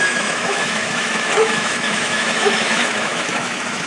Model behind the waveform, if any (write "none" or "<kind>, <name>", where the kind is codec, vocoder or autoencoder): autoencoder, DAC-VAE